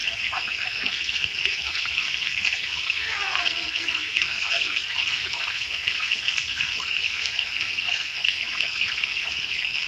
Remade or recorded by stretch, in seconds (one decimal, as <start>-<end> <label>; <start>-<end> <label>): 0.0-9.9 remade